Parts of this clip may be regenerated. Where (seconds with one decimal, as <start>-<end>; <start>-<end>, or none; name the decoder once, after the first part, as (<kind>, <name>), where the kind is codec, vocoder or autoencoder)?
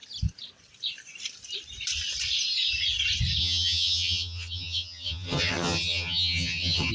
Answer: 3.4-6.9 (vocoder, HiFi-GAN)